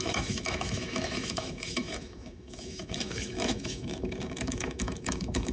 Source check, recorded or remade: remade